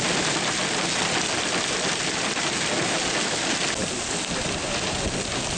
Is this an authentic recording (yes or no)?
yes